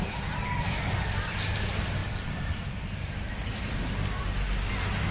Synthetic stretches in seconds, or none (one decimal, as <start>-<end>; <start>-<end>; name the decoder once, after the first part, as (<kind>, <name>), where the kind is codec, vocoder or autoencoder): 2.0-3.3 (vocoder, BigVGAN v2)